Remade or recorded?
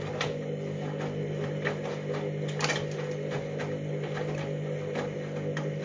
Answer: recorded